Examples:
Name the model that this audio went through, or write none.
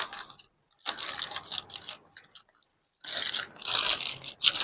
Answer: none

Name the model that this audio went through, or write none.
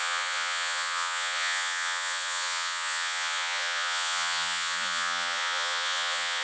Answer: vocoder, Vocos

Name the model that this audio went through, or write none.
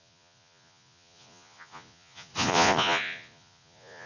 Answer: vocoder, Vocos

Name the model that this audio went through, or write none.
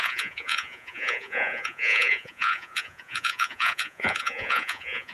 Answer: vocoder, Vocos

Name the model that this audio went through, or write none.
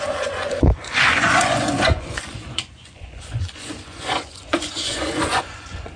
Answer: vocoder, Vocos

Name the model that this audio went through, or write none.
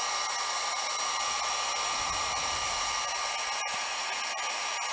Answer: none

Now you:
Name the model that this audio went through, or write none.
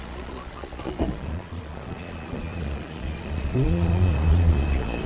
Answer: vocoder, Vocos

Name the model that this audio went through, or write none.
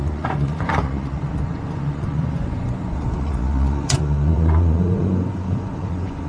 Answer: vocoder, Vocos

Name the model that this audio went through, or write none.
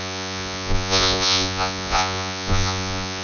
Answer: vocoder, Vocos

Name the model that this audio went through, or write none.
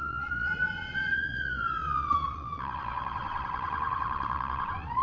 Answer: vocoder, Vocos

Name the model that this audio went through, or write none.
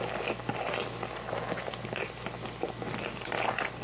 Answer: none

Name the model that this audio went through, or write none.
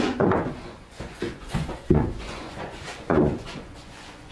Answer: vocoder, Vocos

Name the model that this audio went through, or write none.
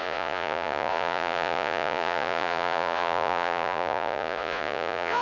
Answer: vocoder, Vocos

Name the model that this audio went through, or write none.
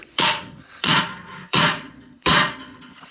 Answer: vocoder, Vocos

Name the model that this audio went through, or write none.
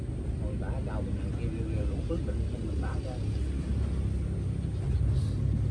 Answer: none